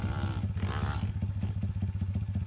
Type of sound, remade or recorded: recorded